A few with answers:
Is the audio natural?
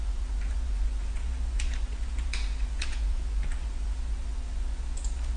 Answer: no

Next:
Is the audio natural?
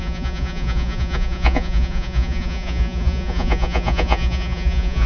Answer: no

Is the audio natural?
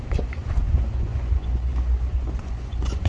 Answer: no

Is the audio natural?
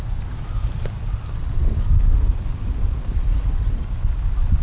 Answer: yes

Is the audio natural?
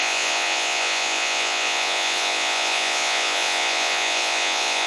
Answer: no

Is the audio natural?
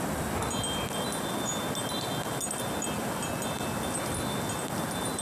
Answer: yes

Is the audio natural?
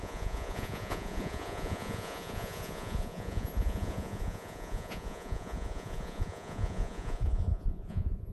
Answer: no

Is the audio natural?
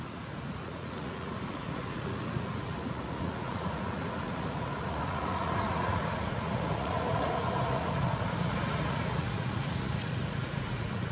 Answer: no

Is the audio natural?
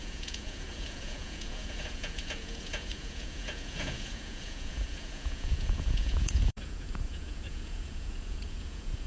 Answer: no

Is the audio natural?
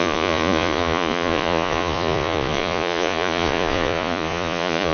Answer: no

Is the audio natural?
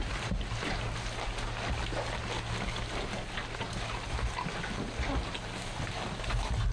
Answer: yes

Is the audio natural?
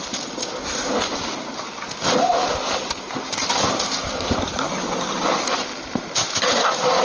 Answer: yes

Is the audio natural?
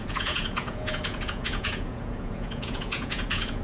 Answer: no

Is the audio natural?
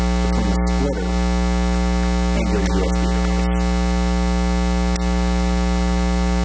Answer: yes